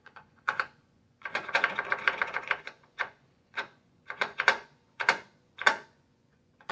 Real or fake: fake